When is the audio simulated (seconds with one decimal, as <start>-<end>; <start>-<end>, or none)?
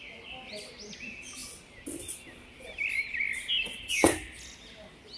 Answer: none